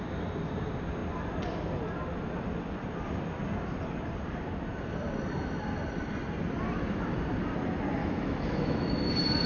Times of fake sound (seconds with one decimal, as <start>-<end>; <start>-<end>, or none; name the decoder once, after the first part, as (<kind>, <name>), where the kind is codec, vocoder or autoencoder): 8.0-9.1 (autoencoder, DAC-VAE)